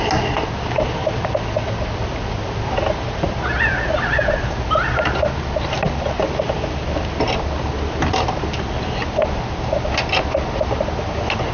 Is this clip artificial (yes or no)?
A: no